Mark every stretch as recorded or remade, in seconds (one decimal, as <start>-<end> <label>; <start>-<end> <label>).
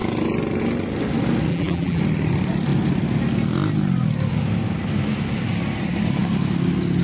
0.0-1.5 recorded; 1.5-2.0 remade; 2.0-7.0 recorded